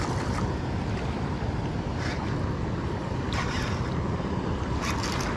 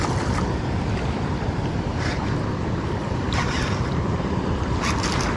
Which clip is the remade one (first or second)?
second